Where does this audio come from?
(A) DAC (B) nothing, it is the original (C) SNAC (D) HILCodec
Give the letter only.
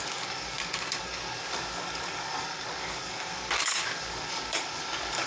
A